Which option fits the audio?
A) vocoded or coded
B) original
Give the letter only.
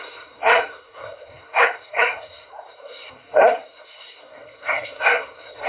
A